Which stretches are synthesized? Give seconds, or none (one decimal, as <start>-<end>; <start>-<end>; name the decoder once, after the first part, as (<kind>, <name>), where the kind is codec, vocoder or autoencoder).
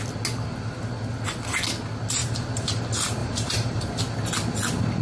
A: 2.2-2.8 (vocoder, BigVGAN v2); 3.2-4.0